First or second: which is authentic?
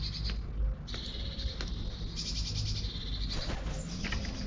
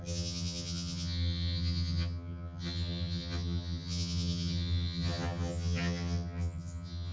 first